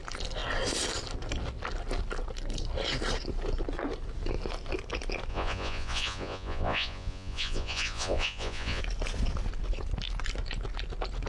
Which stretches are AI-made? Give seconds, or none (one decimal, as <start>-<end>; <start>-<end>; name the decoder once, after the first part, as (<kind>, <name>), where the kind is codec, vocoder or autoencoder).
5.3-8.8 (vocoder, Vocos)